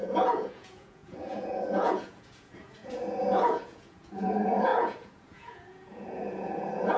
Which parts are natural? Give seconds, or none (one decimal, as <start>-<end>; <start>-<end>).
none